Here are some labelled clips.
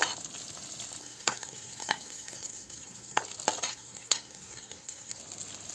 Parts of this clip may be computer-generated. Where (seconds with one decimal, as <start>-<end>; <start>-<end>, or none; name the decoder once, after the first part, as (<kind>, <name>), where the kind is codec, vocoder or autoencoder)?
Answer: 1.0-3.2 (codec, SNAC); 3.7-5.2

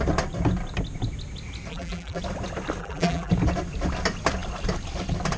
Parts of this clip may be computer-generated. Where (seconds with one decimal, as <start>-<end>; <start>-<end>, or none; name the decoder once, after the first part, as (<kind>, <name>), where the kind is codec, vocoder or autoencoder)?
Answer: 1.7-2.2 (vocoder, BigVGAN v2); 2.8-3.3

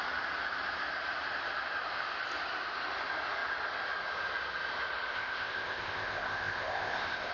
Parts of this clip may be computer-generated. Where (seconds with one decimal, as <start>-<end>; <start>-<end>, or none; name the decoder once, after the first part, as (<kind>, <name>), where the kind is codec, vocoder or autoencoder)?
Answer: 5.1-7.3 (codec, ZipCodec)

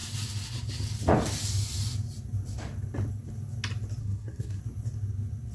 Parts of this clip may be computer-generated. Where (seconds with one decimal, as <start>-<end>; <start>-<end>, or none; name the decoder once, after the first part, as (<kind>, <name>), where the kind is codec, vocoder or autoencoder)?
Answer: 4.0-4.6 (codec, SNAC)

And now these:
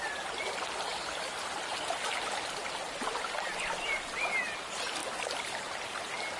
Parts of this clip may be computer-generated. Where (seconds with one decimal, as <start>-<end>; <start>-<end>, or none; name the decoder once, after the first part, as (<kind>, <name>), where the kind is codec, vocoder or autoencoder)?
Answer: none

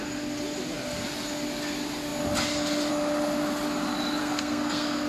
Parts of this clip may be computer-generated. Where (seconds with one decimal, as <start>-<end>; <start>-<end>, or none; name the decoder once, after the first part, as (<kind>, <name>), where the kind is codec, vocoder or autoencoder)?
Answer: 4.2-5.1 (codec, SNAC)